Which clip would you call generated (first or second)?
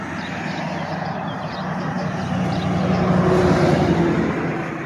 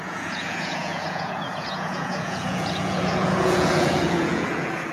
second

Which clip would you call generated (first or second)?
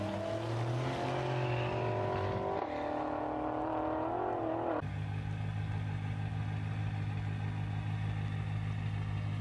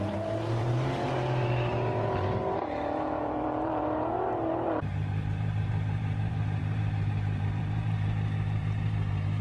second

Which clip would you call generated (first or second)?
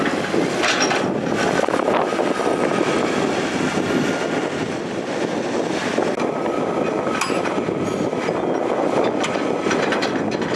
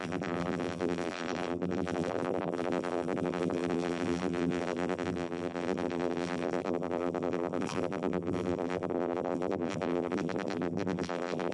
second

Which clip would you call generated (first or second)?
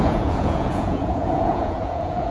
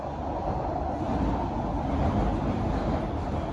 first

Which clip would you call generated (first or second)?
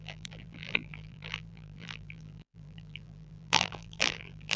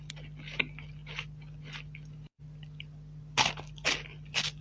first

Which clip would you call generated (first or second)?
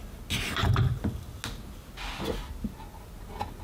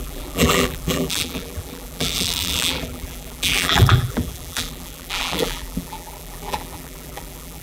second